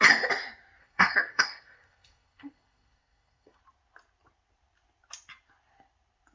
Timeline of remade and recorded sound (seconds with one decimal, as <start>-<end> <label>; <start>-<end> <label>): 0.0-0.8 recorded; 0.8-3.6 remade; 3.6-6.3 recorded